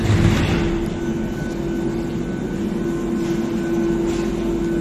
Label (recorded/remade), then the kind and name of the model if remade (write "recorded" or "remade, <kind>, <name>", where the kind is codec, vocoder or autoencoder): recorded